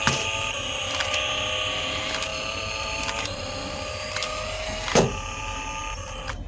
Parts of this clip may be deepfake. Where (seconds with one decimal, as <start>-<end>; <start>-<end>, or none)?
2.3-3.4